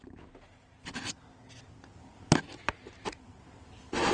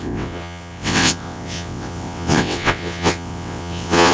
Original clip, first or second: first